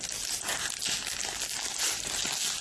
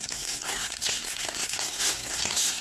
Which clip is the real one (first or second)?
first